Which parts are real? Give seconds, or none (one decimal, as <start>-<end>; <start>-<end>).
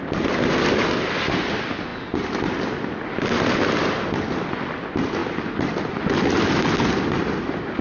0.0-7.8